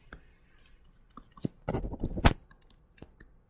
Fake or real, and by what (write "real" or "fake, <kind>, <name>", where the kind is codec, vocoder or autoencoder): real